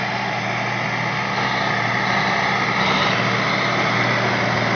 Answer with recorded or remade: recorded